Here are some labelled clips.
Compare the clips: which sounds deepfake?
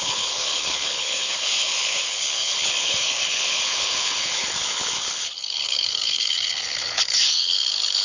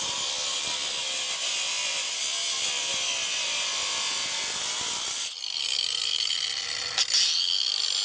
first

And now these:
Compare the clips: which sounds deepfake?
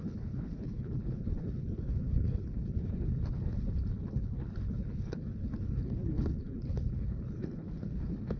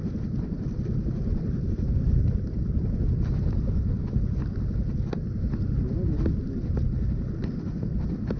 first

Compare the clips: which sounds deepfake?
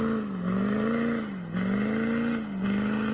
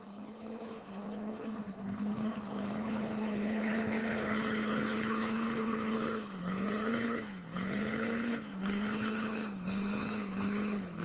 second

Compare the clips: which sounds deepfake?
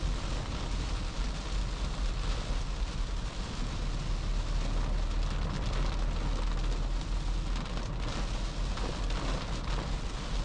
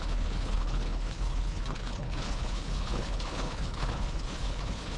second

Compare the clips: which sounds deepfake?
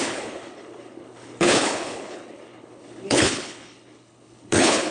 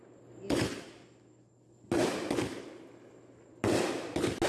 first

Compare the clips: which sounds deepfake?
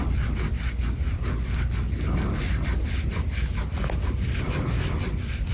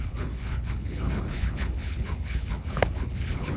second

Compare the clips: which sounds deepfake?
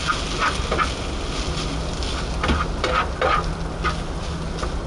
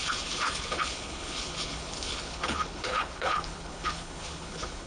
second